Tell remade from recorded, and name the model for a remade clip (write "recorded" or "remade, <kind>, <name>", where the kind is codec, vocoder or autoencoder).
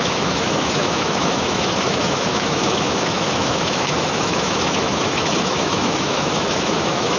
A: remade, autoencoder, DAC-VAE